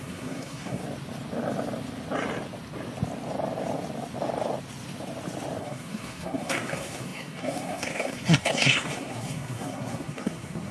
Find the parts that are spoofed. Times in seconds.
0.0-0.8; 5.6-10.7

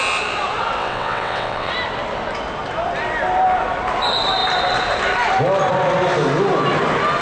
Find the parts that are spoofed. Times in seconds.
0.8-1.7